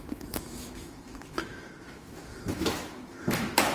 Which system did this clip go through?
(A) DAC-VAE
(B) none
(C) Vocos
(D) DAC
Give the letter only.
A